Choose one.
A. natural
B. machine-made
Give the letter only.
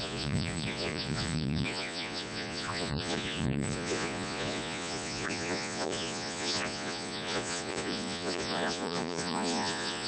B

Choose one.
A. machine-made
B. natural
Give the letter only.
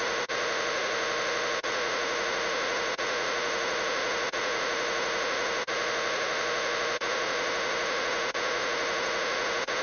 A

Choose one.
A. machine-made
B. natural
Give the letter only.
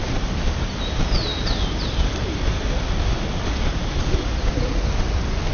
B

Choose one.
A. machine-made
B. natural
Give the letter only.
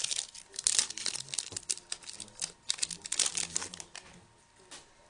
B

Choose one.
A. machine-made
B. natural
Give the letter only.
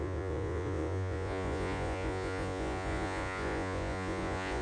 A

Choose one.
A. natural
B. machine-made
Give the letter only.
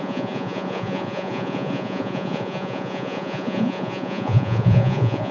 B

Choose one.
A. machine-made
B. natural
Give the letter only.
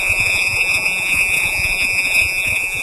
A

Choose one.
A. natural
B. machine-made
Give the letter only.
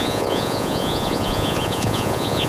B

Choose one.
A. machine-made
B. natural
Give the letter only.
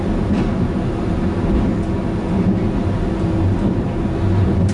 B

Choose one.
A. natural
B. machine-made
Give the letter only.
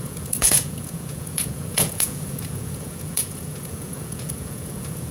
B